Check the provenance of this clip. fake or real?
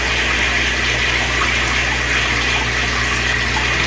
real